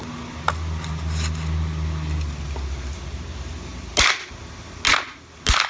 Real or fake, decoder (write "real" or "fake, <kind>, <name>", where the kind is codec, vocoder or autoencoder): real